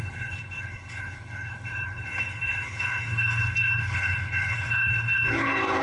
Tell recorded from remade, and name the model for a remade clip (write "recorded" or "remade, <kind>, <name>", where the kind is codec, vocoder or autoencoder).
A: remade, codec, HILCodec